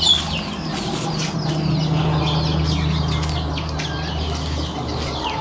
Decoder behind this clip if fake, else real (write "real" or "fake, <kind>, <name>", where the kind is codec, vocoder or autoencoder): real